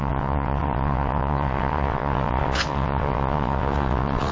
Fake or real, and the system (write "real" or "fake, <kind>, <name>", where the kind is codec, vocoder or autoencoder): fake, vocoder, WaveNeXt